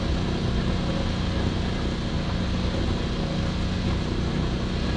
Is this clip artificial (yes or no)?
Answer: no